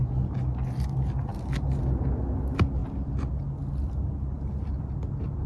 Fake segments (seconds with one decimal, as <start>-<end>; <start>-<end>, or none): none